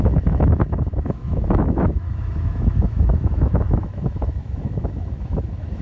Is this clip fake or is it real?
fake